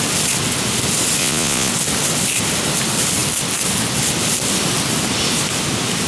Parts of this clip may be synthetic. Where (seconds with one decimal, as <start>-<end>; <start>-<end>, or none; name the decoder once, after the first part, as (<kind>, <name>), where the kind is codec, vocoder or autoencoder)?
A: 1.2-1.7 (vocoder, Vocos)